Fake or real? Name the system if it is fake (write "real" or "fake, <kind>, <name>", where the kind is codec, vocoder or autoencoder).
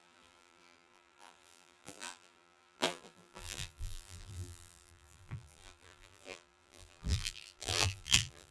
fake, vocoder, BigVGAN v2